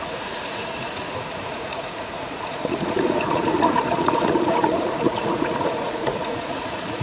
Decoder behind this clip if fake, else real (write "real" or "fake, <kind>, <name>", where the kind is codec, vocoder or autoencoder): fake, vocoder, Vocos